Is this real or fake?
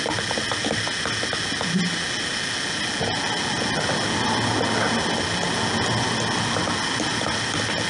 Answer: real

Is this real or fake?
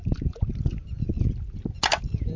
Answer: real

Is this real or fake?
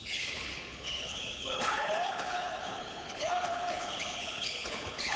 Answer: fake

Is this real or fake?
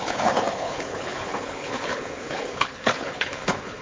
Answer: fake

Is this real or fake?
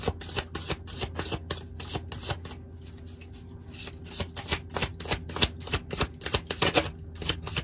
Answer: real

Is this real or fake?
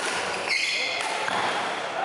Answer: real